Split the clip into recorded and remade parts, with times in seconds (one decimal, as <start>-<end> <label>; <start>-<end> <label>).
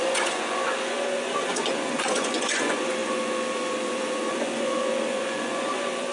0.0-6.1 remade